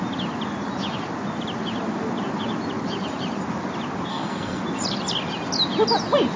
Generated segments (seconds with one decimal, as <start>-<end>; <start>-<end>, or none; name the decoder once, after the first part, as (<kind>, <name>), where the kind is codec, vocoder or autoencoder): 4.1-4.6 (codec, SNAC)